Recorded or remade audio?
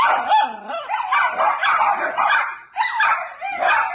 recorded